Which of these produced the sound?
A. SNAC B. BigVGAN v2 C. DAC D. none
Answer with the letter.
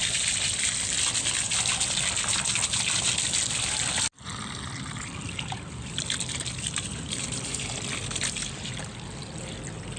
D